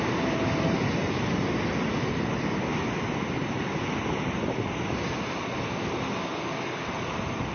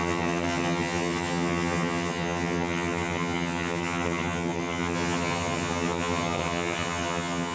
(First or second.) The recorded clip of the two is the first